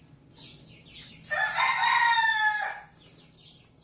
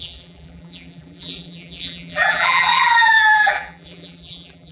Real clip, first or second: first